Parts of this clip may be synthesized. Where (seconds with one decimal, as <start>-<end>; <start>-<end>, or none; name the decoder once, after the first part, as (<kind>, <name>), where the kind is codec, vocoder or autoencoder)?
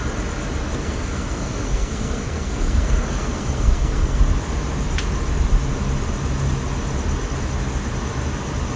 0.6-4.2 (codec, SNAC)